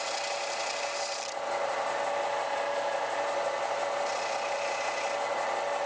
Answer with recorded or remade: recorded